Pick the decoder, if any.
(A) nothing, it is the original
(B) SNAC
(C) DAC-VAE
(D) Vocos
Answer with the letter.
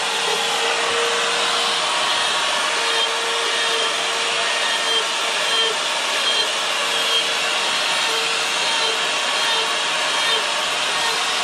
A